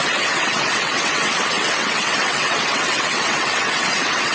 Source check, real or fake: fake